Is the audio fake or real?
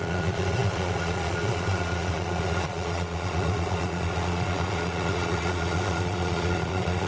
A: fake